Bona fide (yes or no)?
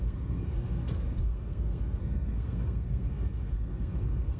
no